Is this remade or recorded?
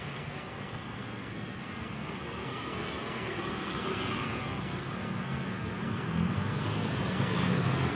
remade